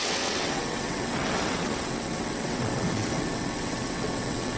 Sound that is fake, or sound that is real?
fake